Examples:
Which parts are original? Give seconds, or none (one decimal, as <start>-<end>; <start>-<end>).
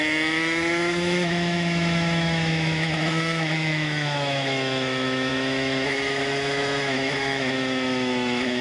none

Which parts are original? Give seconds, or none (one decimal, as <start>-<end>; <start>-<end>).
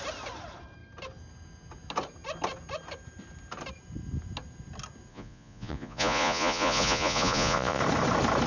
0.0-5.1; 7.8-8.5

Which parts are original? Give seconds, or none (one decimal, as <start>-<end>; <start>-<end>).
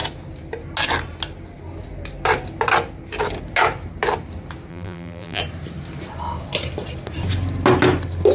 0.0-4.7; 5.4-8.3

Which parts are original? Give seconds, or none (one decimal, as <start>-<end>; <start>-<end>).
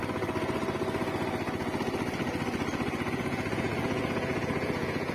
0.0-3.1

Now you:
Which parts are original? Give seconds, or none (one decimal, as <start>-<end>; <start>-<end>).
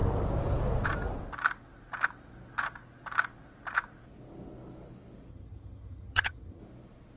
0.0-5.3; 6.6-7.2